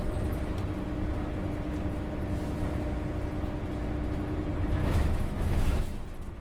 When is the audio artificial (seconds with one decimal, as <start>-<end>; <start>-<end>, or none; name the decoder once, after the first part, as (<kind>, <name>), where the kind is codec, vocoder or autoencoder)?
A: 4.8-6.0 (autoencoder, DAC-VAE)